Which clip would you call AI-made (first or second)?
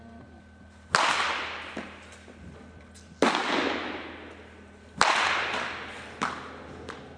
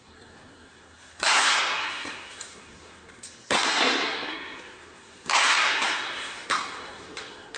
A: second